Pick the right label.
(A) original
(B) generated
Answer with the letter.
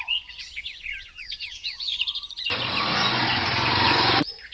B